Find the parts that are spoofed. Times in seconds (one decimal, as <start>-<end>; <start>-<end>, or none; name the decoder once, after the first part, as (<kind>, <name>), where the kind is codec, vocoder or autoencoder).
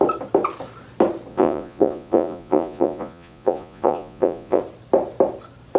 1.3-4.6 (vocoder, Vocos)